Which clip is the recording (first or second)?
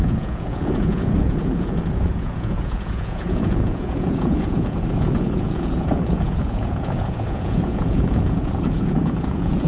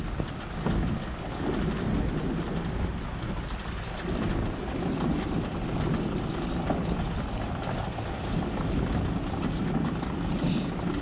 second